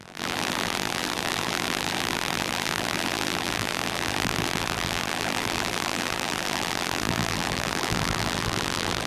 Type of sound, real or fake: fake